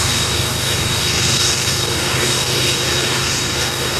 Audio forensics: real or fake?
fake